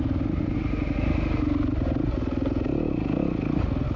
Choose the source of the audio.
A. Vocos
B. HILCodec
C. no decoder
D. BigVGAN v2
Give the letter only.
C